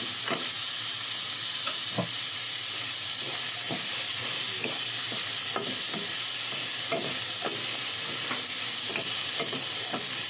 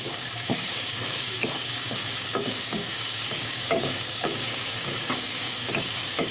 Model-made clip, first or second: second